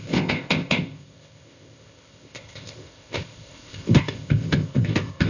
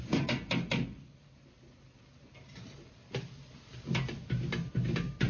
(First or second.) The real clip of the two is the second